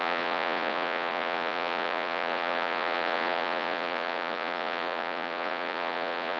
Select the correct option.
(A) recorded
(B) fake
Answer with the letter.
B